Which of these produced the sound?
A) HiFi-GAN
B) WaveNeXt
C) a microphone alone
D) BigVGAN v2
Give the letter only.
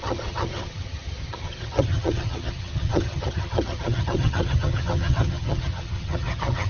A